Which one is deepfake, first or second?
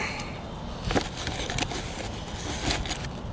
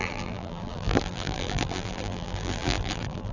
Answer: second